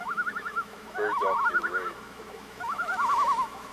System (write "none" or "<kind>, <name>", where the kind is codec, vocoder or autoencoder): autoencoder, DAC-VAE